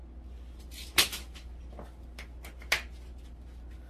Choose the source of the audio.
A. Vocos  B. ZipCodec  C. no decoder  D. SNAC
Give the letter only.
C